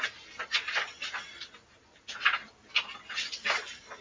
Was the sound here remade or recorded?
recorded